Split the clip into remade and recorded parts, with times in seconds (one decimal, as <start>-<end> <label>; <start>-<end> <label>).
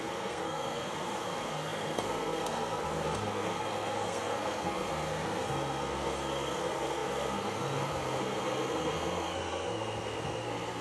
0.0-10.8 remade